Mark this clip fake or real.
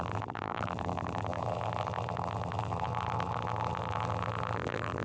fake